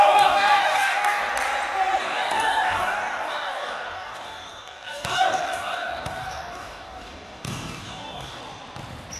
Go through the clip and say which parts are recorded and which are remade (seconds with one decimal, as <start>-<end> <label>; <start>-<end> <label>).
0.0-1.2 remade; 1.2-2.0 recorded; 2.0-8.4 remade; 8.4-9.2 recorded